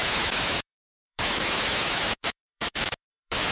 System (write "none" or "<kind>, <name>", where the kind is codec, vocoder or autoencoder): autoencoder, DAC-VAE